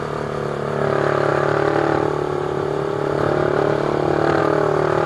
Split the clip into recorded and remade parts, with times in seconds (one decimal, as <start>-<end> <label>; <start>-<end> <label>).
0.0-1.3 recorded; 1.3-4.4 remade; 4.4-5.1 recorded